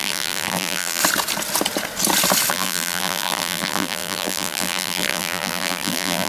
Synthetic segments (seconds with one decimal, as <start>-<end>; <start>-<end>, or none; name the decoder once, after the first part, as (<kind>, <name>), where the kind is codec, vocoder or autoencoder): 0.0-1.0 (vocoder, BigVGAN v2); 2.5-6.3